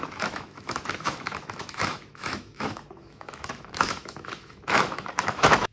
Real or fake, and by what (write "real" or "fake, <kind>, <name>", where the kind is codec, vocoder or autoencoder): fake, autoencoder, DAC-VAE